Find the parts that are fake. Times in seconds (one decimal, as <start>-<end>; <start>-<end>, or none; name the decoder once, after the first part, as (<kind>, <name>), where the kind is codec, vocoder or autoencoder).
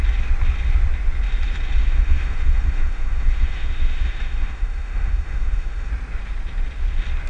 1.8-5.9 (autoencoder, DAC-VAE)